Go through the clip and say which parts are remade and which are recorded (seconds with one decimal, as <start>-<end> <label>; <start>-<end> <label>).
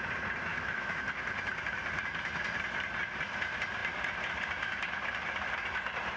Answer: 0.0-0.5 recorded; 0.5-1.0 remade; 1.0-6.2 recorded